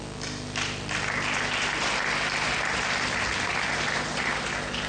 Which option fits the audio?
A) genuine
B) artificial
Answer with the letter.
A